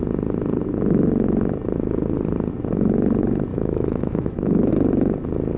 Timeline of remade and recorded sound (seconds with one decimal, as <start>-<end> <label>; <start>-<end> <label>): 0.0-3.5 recorded; 3.5-4.7 remade; 4.7-5.6 recorded